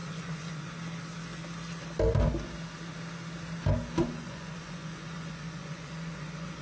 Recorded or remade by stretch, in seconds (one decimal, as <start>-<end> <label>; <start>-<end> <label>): 0.0-0.7 remade; 0.7-4.0 recorded; 4.0-6.6 remade